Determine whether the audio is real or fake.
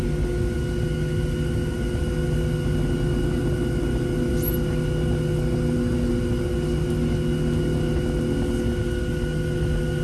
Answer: real